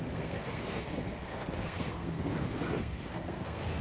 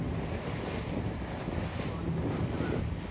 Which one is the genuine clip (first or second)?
second